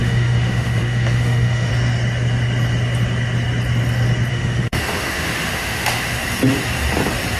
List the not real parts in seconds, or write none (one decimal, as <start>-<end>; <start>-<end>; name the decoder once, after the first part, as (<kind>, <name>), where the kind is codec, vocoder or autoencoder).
0.0-1.7 (autoencoder, DAC-VAE); 4.3-6.2